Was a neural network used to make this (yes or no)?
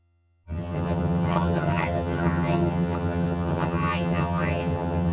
yes